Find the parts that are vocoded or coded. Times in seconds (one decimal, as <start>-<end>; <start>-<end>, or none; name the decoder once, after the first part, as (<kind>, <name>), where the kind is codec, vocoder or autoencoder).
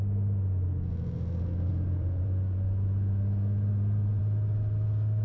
1.7-4.2 (vocoder, Vocos)